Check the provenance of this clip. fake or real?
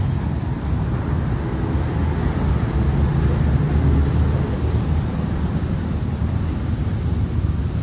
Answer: real